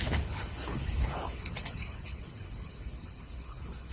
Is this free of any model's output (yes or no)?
no